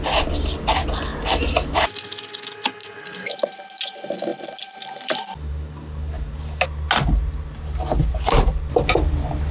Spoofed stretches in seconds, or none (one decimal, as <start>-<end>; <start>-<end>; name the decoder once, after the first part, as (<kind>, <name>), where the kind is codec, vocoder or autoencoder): 1.1-1.9 (vocoder, BigVGAN v2)